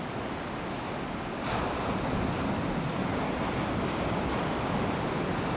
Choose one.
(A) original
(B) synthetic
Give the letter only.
A